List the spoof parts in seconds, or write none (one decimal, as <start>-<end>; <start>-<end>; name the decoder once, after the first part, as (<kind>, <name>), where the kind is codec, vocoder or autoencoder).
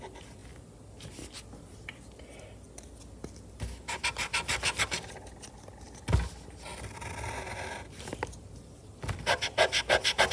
none